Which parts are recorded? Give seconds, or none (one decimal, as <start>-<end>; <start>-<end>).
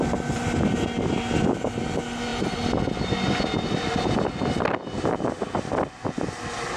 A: 0.0-6.8